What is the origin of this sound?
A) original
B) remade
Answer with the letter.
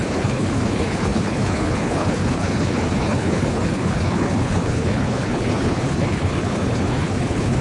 B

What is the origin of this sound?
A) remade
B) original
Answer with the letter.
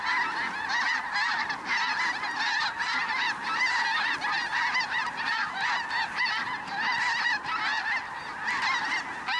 B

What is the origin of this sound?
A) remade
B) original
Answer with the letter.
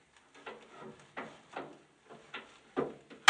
B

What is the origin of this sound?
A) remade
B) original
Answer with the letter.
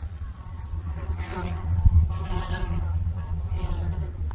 A